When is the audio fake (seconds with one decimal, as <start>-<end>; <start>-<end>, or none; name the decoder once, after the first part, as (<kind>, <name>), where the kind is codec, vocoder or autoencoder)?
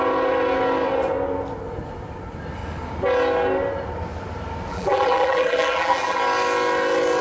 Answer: 4.7-6.2 (vocoder, BigVGAN v2)